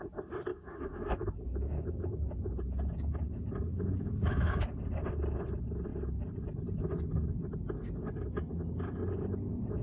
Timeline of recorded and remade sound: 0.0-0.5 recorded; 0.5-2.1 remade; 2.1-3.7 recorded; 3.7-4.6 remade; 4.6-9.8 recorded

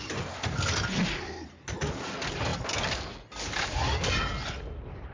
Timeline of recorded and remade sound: 0.0-5.1 recorded

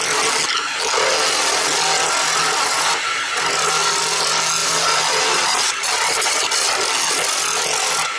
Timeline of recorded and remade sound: 0.0-4.6 recorded; 4.6-6.3 remade; 6.3-8.2 recorded